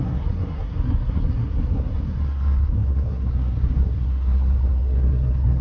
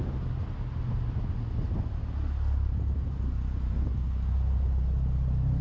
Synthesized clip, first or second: first